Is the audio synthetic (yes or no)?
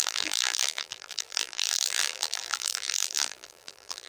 yes